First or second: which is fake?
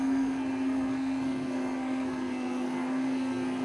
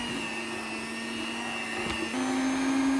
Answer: first